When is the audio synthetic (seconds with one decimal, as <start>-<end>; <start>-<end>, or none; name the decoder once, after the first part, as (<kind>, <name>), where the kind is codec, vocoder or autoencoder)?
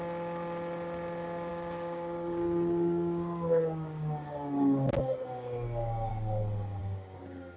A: 1.5-6.1 (codec, DAC); 6.8-7.6